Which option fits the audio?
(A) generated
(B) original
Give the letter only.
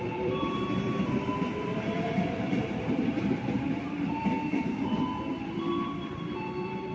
A